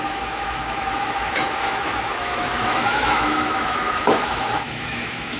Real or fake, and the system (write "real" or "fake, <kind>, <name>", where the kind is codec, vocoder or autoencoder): fake, autoencoder, DAC-VAE